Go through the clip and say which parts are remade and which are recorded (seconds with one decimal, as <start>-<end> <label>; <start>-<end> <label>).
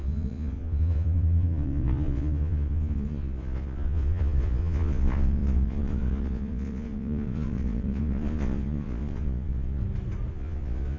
0.0-9.8 remade; 9.8-10.3 recorded; 10.3-11.0 remade